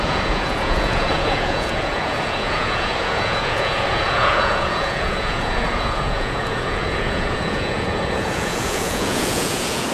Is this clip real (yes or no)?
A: no